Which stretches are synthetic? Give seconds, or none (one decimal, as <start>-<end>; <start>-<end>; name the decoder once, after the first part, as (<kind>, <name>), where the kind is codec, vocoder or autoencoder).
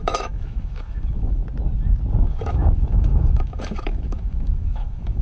0.0-1.4 (autoencoder, DAC-VAE); 2.3-5.2